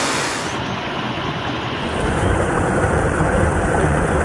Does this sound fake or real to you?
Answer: fake